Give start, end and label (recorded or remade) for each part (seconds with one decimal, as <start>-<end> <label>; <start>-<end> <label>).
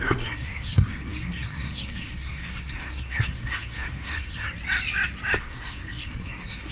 0.0-4.5 remade; 4.5-5.4 recorded; 5.4-6.7 remade